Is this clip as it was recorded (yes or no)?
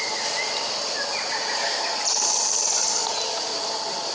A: yes